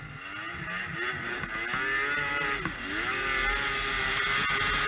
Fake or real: real